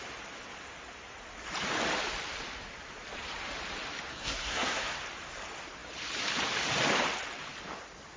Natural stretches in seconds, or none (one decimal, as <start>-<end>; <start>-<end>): 0.0-4.1; 5.0-8.2